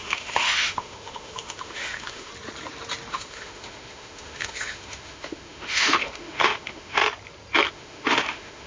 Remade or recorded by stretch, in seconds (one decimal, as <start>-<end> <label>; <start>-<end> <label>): 0.0-2.3 remade; 2.3-3.1 recorded; 3.1-7.0 remade; 7.0-7.7 recorded; 7.7-8.7 remade